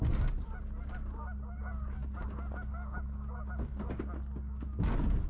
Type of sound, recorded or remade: recorded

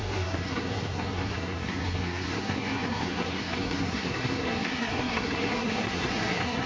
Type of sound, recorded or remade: remade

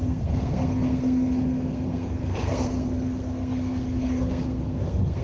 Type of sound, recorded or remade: remade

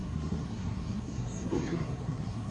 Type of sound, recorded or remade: remade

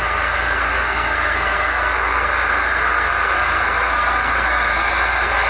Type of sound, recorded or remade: remade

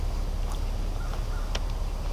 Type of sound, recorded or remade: recorded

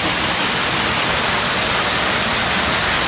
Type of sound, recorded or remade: recorded